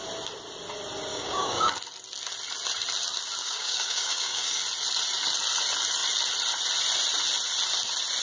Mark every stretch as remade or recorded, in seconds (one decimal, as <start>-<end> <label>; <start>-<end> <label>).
0.0-1.1 recorded; 1.1-1.7 remade; 1.7-3.4 recorded; 3.4-4.6 remade; 4.6-8.2 recorded